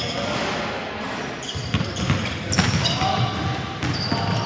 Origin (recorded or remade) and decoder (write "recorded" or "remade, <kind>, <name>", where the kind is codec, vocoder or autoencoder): recorded